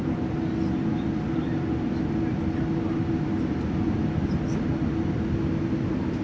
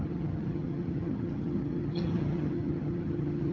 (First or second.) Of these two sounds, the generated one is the second